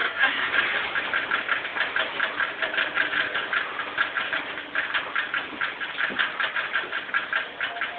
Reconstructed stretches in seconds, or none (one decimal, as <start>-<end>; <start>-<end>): 0.0-0.5